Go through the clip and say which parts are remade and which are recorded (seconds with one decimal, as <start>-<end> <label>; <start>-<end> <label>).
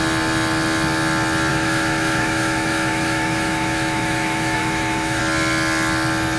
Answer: 0.0-1.5 recorded; 1.5-5.2 remade; 5.2-6.4 recorded